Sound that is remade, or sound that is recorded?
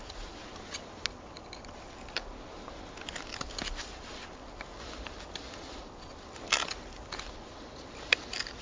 recorded